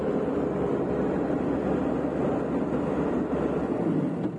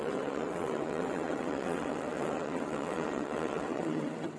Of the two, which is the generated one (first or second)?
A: second